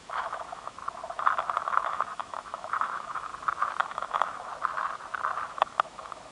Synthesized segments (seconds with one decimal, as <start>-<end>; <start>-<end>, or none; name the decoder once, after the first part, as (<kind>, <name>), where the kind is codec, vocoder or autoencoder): 0.0-0.8 (autoencoder, DAC-VAE); 1.6-3.3; 3.8-4.5; 5.5-6.3